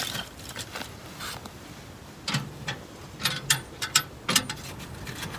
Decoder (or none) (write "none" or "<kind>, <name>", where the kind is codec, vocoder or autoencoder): none